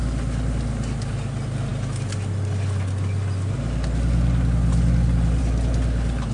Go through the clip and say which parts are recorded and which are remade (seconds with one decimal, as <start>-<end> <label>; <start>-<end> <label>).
0.0-6.3 recorded